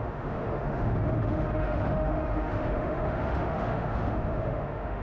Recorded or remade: remade